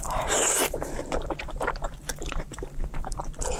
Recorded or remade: remade